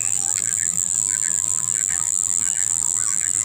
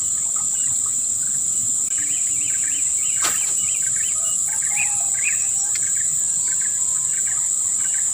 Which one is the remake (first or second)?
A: first